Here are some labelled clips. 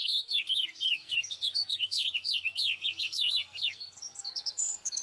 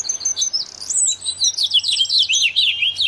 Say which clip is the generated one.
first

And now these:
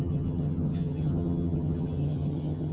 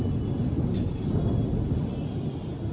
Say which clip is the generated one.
first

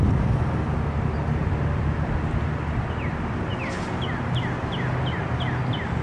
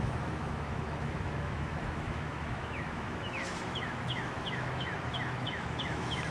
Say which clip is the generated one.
second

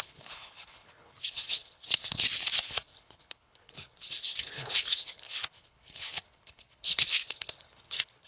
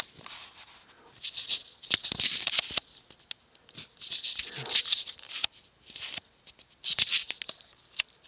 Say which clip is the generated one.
first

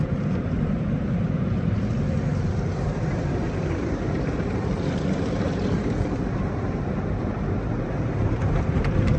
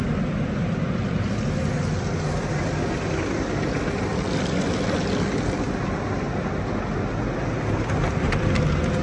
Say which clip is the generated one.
first